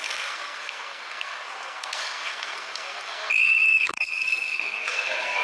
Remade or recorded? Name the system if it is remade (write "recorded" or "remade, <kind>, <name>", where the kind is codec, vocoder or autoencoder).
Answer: remade, codec, SNAC